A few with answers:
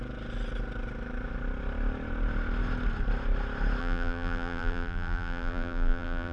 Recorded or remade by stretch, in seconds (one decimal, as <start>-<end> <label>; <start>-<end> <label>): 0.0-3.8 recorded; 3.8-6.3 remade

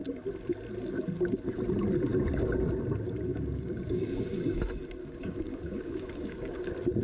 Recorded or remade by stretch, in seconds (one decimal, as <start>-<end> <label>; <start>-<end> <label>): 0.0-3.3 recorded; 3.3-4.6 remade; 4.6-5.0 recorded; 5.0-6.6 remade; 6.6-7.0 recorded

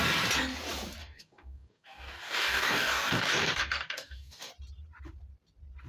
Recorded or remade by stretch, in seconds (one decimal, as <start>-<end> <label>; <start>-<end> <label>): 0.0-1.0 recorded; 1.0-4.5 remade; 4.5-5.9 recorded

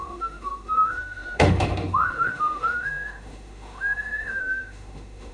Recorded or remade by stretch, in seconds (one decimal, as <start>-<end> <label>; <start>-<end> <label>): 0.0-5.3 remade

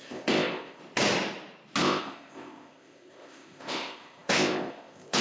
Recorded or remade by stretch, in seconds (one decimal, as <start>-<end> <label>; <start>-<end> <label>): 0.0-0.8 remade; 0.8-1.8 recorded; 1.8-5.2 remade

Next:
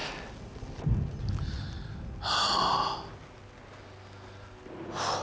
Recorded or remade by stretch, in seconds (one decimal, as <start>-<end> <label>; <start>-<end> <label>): 0.0-5.2 recorded

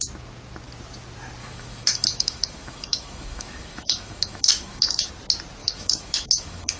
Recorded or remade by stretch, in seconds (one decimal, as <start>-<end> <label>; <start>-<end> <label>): 0.0-1.4 recorded; 1.4-5.1 remade; 5.1-5.6 recorded; 5.6-6.8 remade

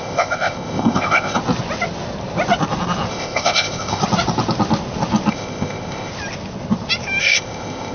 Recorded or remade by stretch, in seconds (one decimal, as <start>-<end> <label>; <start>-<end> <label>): 0.0-1.4 remade; 1.4-3.1 recorded; 3.1-4.0 remade; 4.0-5.3 recorded; 5.3-6.1 remade; 6.1-7.2 recorded; 7.2-7.9 remade